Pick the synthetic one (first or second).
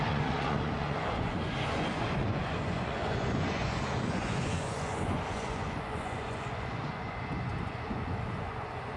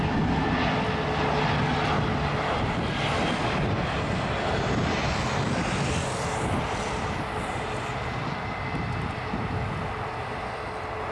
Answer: first